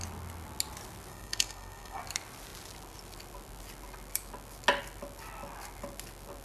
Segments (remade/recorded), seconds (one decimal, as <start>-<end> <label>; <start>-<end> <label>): 0.0-1.1 recorded; 1.1-2.0 remade; 2.0-6.4 recorded